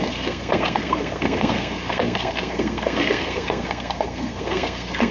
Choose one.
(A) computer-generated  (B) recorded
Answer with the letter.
A